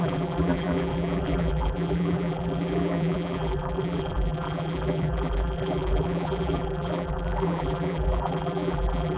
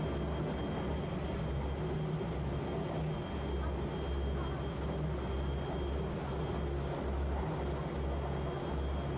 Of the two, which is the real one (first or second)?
second